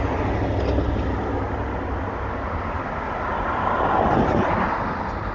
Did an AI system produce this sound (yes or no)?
no